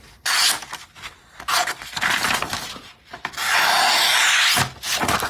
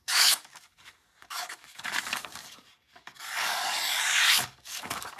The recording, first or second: first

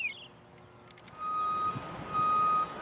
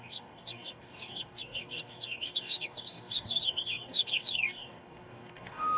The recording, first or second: first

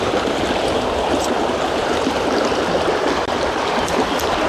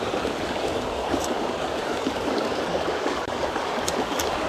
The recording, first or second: first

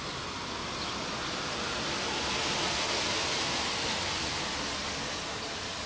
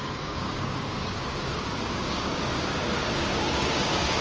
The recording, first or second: first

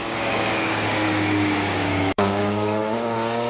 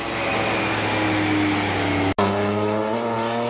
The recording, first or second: second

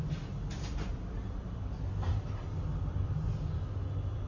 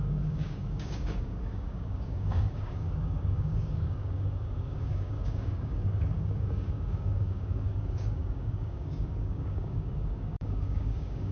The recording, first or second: first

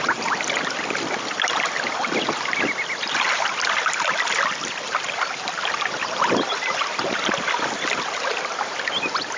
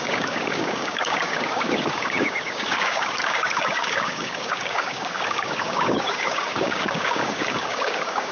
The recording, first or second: first